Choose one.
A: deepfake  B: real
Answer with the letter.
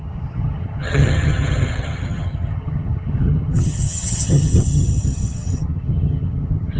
A